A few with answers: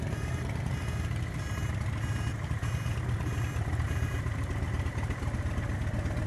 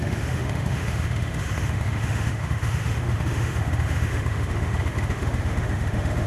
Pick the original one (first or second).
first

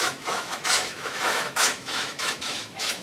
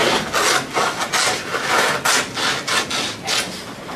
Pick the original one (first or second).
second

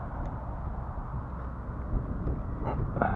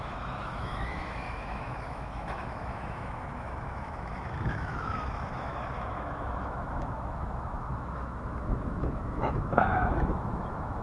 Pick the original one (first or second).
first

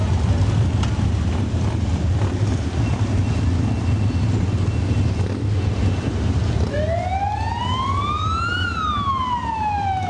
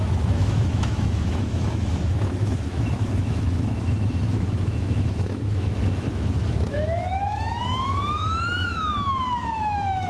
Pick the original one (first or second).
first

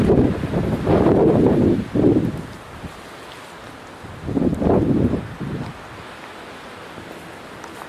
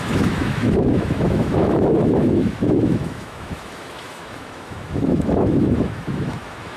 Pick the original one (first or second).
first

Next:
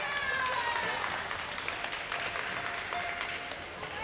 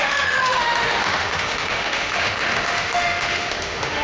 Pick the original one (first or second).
first